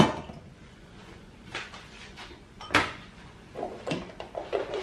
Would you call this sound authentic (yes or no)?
no